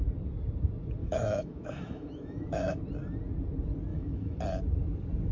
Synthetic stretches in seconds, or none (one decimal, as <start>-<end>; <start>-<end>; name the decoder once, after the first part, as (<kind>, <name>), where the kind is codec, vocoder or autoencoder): 1.0-2.8 (autoencoder, DAC-VAE); 3.9-4.4